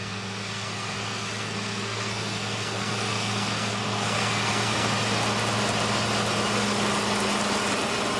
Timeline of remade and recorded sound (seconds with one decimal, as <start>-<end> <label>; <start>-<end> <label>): 0.0-4.9 remade; 4.9-8.2 recorded